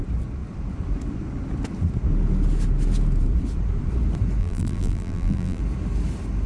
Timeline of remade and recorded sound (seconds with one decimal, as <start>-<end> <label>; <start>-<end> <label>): 0.0-4.4 recorded; 4.4-5.6 remade; 5.6-6.5 recorded